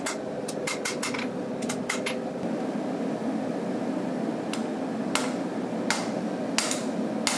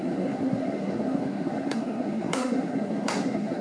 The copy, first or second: second